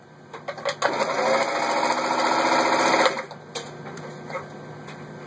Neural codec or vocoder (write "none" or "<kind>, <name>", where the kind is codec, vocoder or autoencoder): none